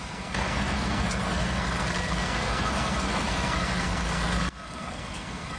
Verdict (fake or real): fake